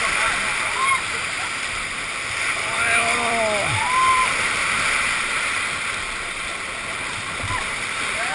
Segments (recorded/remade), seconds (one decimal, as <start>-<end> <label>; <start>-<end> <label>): 0.0-2.4 recorded; 2.4-3.4 remade; 3.4-8.3 recorded